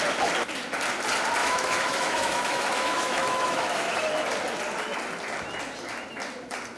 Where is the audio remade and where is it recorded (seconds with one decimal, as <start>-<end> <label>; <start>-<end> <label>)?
0.0-1.4 recorded; 1.4-4.0 remade; 4.0-6.8 recorded